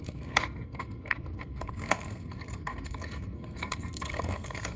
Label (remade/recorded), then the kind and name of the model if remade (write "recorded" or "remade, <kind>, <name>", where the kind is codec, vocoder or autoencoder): remade, codec, SNAC